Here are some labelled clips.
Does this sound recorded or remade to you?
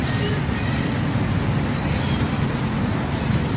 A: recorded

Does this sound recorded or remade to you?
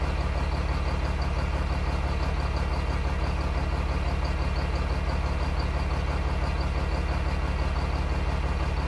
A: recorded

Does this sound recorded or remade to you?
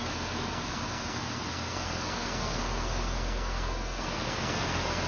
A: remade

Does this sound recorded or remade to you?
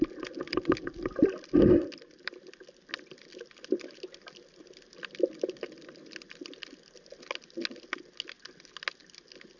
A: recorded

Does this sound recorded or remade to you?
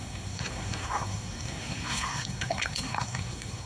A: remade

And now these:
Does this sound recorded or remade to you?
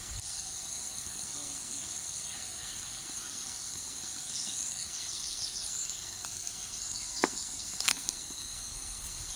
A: remade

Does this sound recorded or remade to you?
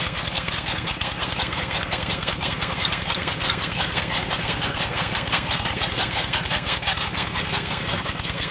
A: remade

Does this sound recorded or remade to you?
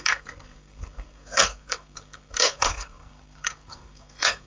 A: remade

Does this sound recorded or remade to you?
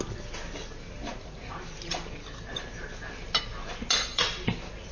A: recorded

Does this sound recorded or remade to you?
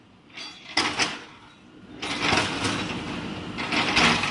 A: recorded